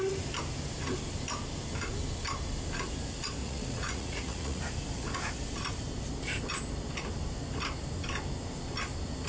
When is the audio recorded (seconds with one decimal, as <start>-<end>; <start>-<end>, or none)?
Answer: 0.0-3.4; 4.6-9.3